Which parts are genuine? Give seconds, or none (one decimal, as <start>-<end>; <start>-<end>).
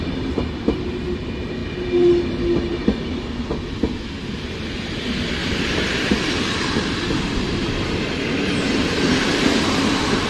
0.0-5.4; 9.9-10.3